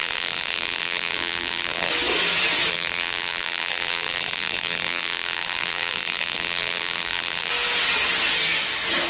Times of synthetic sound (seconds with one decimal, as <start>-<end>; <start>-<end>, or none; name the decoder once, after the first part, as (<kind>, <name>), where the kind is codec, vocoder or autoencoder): 0.0-1.9 (vocoder, BigVGAN v2); 2.7-7.5